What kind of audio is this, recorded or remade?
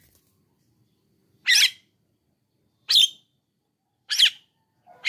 remade